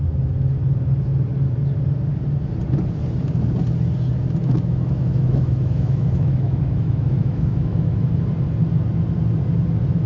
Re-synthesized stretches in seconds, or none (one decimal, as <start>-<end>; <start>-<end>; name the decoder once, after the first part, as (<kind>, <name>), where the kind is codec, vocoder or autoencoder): 4.4-8.0 (autoencoder, DAC-VAE)

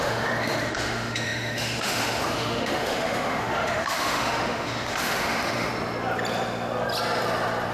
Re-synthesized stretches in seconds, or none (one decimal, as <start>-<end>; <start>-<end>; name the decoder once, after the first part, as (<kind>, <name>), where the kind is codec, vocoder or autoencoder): 0.0-5.7 (autoencoder, DAC-VAE)

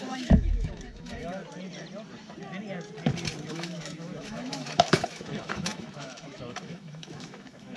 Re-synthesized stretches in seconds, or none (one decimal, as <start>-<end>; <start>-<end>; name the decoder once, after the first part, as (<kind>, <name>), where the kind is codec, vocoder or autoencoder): 0.0-1.4 (autoencoder, DAC-VAE); 3.5-7.8

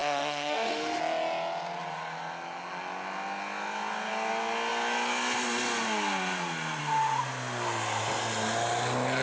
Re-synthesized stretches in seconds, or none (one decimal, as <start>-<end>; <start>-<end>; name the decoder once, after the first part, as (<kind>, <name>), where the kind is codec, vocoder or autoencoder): 0.0-1.0 (autoencoder, DAC-VAE)